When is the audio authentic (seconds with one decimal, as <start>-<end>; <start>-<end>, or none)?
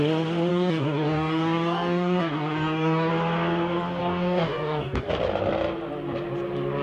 0.0-0.5; 3.1-4.0; 5.1-6.8